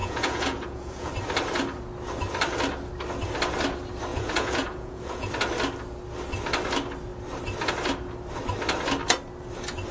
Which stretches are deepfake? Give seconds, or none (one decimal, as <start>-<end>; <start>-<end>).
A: 0.0-1.1; 4.1-5.3